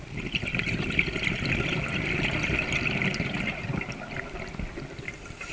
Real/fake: real